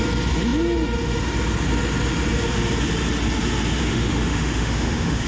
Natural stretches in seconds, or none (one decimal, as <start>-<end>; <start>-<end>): 0.0-3.8